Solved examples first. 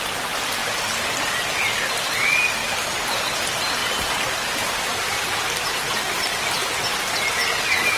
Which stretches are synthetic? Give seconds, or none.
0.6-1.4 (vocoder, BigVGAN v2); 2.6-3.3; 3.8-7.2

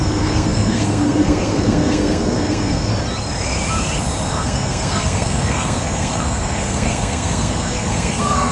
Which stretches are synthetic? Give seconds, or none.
0.0-2.9 (codec, SNAC); 4.3-8.5

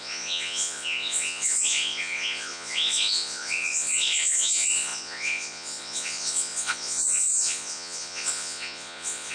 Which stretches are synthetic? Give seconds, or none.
0.0-9.3 (vocoder, Vocos)

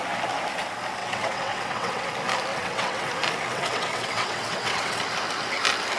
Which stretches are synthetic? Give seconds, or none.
1.0-2.1 (vocoder, WaveNeXt); 2.5-3.1; 3.5-5.0

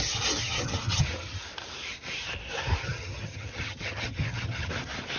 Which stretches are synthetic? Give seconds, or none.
0.4-1.4 (vocoder, HiFi-GAN); 2.8-4.7

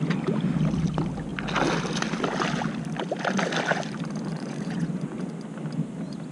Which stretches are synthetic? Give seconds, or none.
4.3-5.3 (vocoder, Vocos)

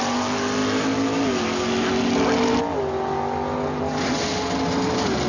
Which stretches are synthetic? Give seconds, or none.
none

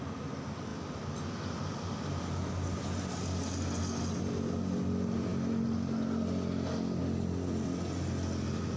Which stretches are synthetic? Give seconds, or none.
none